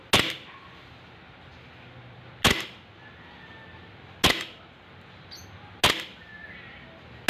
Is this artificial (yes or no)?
no